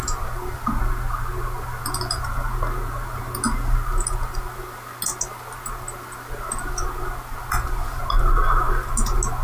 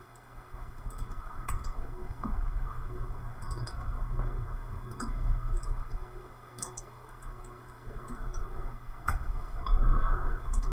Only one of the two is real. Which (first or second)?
first